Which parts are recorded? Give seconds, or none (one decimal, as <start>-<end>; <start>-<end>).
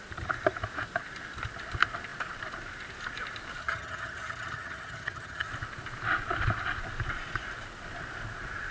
0.0-3.6; 5.5-8.7